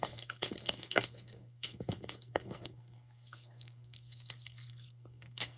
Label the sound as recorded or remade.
remade